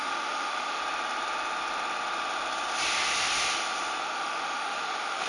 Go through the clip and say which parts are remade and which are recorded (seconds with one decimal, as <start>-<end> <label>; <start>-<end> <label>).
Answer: 0.0-0.8 remade; 0.8-4.0 recorded; 4.0-5.3 remade

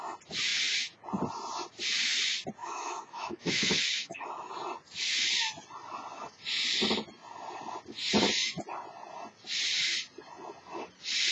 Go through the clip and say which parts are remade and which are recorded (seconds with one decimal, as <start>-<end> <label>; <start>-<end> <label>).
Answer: 0.0-2.6 recorded; 2.6-4.5 remade; 4.5-11.3 recorded

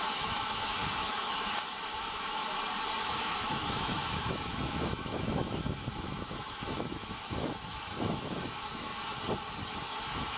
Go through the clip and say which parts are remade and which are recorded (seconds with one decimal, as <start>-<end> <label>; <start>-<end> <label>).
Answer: 0.0-2.4 remade; 2.4-3.0 recorded; 3.0-8.9 remade; 8.9-9.7 recorded; 9.7-10.4 remade

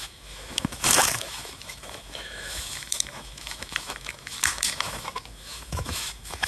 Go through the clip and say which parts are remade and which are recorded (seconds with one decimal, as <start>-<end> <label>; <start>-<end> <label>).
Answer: 0.0-6.5 remade

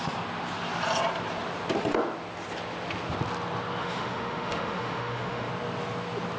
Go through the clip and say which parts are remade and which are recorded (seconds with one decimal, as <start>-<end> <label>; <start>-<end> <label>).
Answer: 0.0-3.8 recorded; 3.8-5.5 remade; 5.5-6.4 recorded

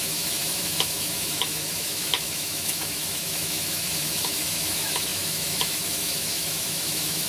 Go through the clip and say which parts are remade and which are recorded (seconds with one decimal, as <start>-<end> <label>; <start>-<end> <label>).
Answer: 0.0-7.3 remade

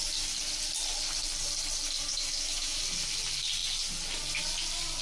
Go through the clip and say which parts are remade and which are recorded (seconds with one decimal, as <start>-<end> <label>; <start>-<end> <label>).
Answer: 0.0-2.1 recorded; 2.1-2.8 remade; 2.8-5.0 recorded